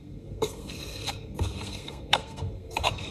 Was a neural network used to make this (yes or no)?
yes